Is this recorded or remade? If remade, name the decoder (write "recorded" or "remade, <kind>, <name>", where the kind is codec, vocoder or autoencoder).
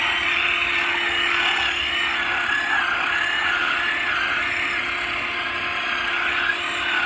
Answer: recorded